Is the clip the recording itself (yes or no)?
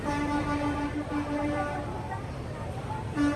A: no